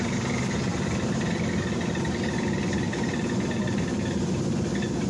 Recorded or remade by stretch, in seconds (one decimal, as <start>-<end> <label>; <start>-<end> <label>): 0.0-5.1 recorded